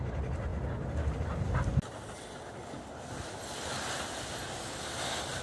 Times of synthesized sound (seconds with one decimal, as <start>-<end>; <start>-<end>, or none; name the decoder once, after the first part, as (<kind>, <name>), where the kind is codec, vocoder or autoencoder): none